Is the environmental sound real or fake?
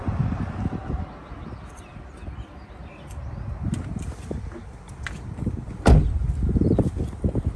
real